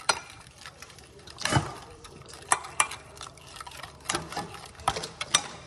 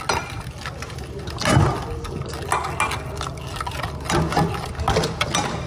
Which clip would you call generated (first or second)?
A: first